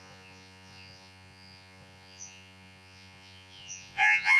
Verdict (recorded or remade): remade